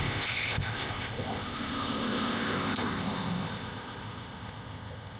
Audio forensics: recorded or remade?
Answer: remade